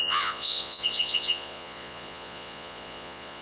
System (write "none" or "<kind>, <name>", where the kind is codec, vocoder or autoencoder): vocoder, Vocos